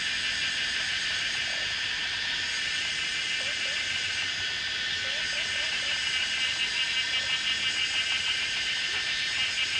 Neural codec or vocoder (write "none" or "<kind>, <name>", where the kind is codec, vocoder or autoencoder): none